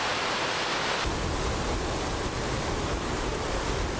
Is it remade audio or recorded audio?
remade